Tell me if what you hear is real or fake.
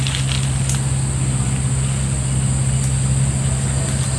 fake